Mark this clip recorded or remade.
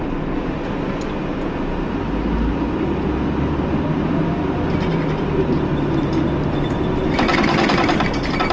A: recorded